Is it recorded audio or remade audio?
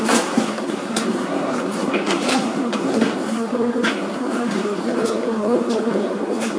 remade